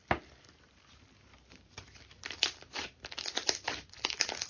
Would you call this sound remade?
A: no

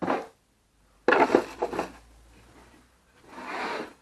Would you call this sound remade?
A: no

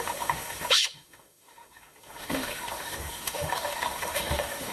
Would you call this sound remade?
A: yes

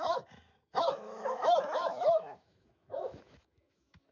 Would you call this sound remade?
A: yes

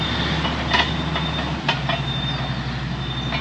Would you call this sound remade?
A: no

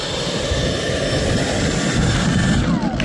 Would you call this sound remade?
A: no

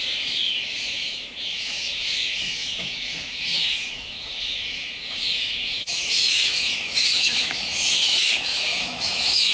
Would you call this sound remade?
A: yes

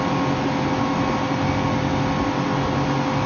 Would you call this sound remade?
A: no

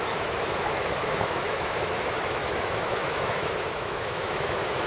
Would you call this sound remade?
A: yes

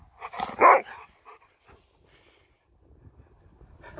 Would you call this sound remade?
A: no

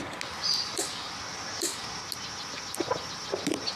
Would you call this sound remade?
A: no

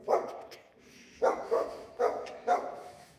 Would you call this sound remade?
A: yes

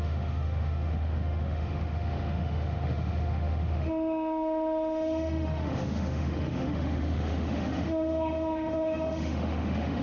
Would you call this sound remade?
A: yes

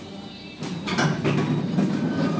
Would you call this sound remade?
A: no